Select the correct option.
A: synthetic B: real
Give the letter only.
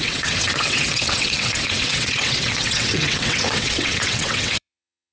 A